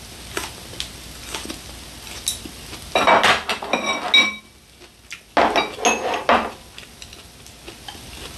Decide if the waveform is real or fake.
real